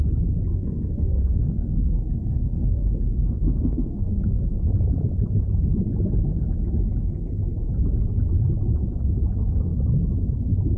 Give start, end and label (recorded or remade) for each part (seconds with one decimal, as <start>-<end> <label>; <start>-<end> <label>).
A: 0.0-0.5 recorded; 0.5-4.4 remade; 4.4-10.8 recorded